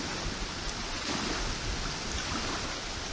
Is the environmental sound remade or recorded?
recorded